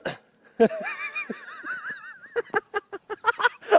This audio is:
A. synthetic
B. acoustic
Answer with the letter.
B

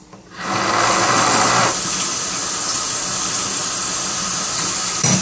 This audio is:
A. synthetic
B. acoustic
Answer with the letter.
B